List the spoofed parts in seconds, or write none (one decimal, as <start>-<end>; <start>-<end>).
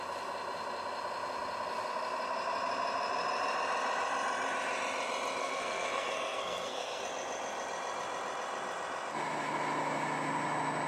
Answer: 5.4-7.0